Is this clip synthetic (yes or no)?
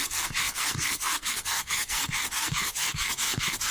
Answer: yes